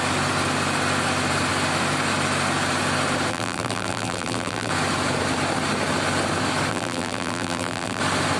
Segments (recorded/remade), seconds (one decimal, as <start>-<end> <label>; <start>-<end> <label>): 0.0-3.3 recorded; 3.3-4.7 remade; 4.7-6.7 recorded; 6.7-8.0 remade; 8.0-8.4 recorded

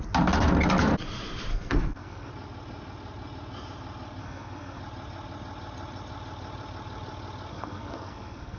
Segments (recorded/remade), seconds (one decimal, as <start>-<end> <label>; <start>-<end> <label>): 0.0-1.5 recorded; 1.5-2.3 remade; 2.3-4.2 recorded; 4.2-4.8 remade; 4.8-7.5 recorded; 7.5-8.6 remade